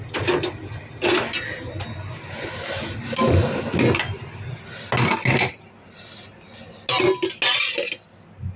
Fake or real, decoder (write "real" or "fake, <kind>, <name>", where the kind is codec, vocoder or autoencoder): real